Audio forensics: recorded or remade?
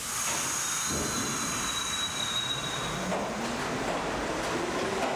recorded